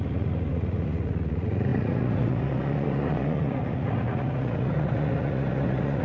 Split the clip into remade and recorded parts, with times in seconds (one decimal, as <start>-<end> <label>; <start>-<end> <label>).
0.0-6.0 remade